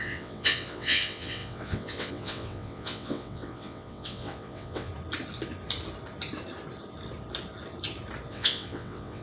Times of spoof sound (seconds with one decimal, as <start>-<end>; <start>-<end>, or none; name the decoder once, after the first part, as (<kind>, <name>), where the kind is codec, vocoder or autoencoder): 0.0-4.9 (vocoder, WaveNeXt); 8.3-9.2